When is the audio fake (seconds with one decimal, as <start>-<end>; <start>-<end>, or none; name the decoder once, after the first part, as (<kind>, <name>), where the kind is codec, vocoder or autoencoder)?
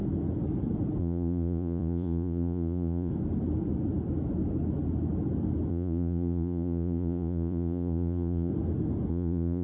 1.0-3.1 (vocoder, Vocos); 5.7-8.5; 9.1-9.6